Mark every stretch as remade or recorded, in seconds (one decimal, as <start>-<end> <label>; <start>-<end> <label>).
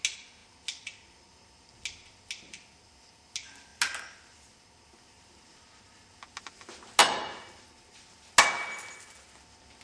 0.0-7.0 recorded; 7.0-7.6 remade; 7.6-9.8 recorded